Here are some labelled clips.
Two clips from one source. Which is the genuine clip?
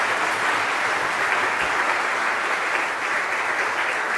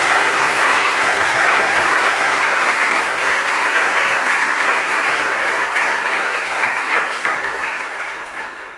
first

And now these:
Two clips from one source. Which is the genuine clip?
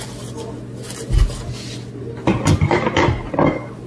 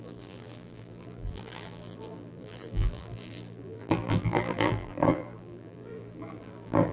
first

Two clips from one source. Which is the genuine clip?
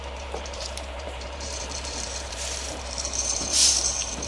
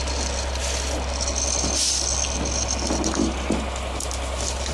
second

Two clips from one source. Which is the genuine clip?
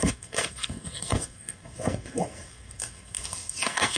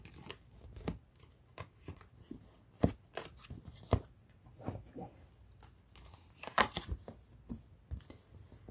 second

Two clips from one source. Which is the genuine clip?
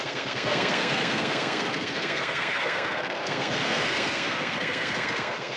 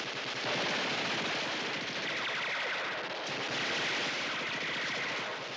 second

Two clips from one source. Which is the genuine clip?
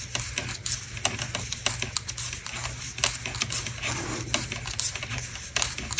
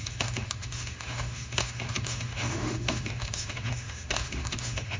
first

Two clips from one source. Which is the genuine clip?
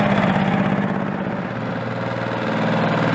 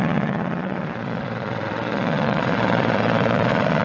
first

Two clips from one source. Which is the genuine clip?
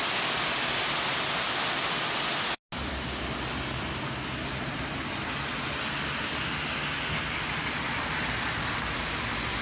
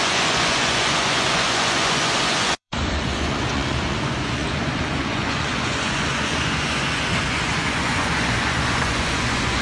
first